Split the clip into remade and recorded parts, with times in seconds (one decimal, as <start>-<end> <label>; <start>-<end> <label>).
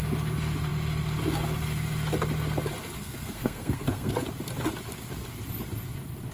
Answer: 0.0-3.0 recorded; 3.0-4.1 remade; 4.1-6.3 recorded